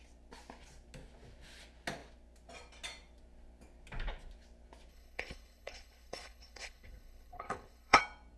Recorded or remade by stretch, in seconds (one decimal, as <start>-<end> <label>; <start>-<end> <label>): 0.0-4.9 recorded; 4.9-8.0 remade; 8.0-8.4 recorded